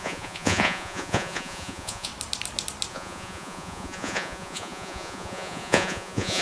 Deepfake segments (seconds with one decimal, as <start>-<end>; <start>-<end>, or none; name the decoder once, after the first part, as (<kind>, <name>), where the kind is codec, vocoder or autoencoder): 0.0-2.1 (vocoder, Vocos); 2.9-6.4